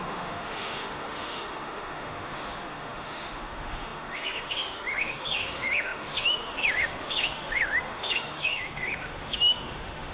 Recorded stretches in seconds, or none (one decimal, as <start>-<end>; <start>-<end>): none